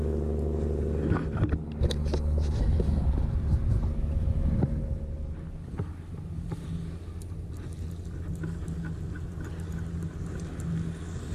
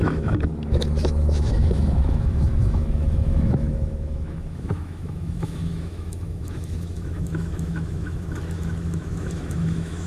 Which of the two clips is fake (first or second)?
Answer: second